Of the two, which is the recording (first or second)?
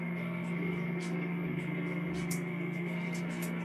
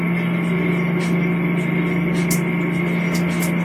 second